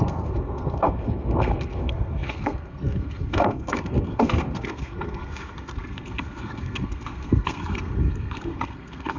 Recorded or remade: remade